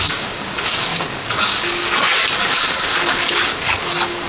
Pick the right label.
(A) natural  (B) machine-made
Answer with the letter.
B